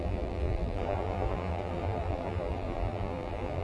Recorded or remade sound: remade